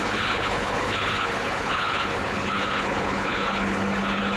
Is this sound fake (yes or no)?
yes